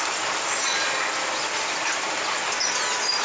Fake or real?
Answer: real